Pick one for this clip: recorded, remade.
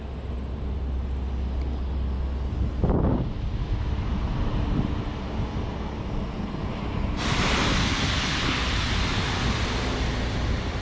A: recorded